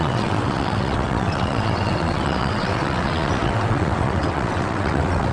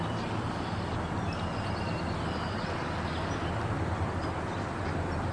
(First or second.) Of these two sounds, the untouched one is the second